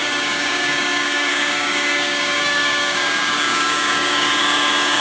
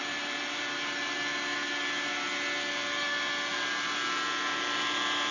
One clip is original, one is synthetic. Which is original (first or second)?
second